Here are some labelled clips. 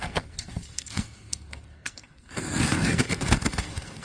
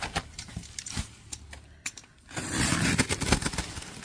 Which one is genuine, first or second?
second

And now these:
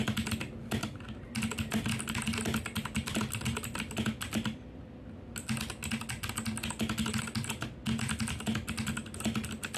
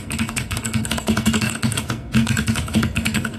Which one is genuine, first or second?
first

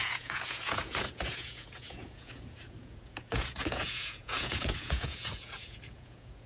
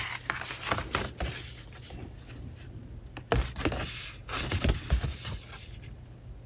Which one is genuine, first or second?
second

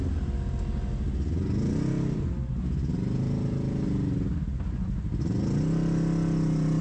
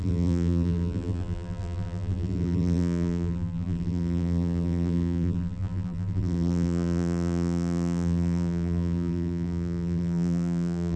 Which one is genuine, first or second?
first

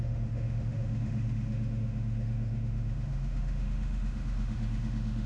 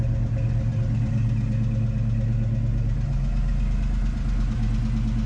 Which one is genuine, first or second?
second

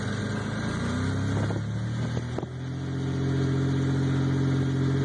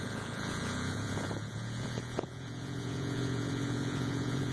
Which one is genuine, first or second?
first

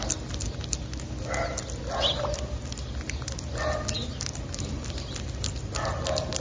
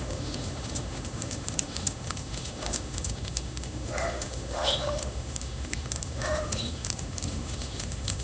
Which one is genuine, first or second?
first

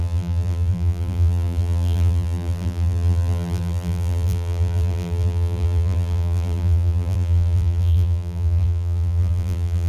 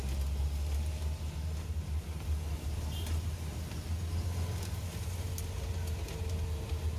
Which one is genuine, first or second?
second